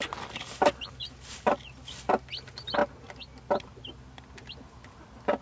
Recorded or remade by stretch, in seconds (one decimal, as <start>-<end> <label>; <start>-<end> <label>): 0.0-5.4 recorded